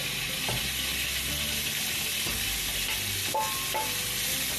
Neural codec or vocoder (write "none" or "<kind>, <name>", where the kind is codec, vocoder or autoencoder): none